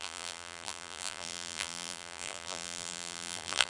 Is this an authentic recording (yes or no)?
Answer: no